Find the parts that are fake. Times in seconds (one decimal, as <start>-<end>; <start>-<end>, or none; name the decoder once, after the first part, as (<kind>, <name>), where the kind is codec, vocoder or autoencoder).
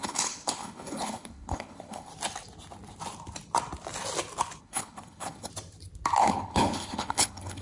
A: 0.0-2.1 (codec, HILCodec); 4.6-5.5; 6.2-7.6